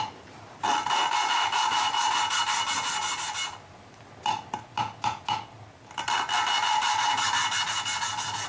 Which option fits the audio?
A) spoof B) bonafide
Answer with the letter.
B